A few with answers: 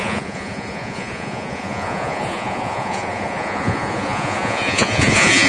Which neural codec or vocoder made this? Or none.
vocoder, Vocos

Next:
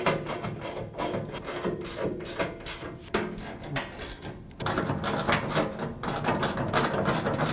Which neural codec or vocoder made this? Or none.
none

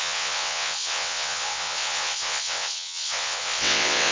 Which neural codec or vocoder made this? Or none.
vocoder, WaveNeXt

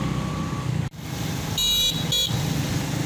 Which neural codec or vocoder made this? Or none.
none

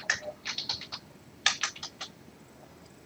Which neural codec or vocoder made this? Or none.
none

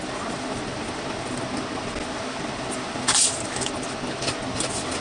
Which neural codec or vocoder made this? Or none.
none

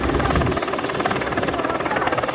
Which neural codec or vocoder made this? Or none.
none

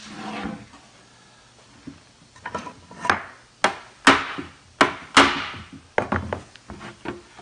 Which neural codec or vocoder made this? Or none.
none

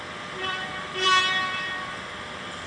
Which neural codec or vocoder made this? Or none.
vocoder, BigVGAN v2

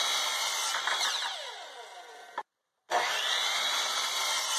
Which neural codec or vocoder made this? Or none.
none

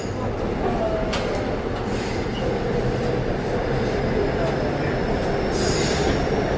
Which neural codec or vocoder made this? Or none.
none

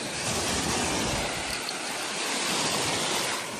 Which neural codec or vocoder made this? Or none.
none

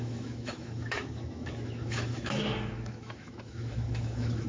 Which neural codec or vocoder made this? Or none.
autoencoder, DAC-VAE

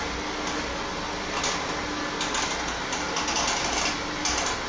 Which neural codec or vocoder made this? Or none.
none